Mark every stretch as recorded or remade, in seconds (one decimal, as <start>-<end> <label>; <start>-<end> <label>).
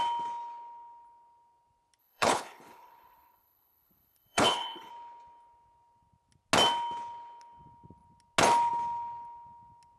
0.0-2.0 recorded; 2.0-4.9 remade; 4.9-10.0 recorded